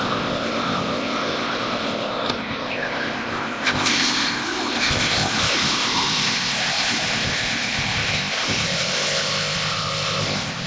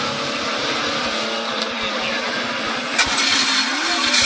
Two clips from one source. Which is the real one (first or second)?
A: second